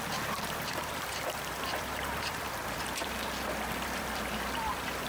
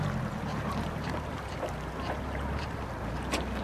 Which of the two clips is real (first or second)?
second